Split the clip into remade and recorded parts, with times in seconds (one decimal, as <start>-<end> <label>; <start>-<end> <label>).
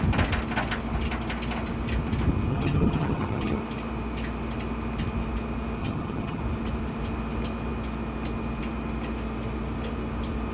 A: 0.0-2.5 recorded; 2.5-3.6 remade; 3.6-5.8 recorded; 5.8-6.4 remade; 6.4-10.5 recorded